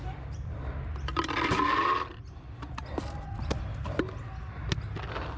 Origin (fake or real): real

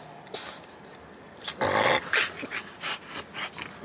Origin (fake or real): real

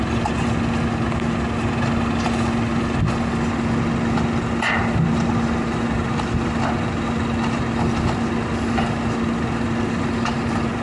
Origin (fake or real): fake